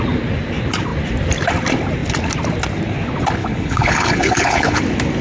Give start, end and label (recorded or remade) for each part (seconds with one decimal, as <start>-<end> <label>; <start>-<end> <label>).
0.0-3.4 recorded; 3.4-4.8 remade; 4.8-5.2 recorded